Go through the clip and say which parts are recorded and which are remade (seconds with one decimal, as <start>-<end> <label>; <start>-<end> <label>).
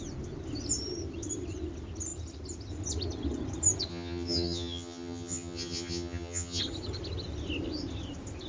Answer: 0.0-3.9 recorded; 3.9-6.6 remade; 6.6-8.5 recorded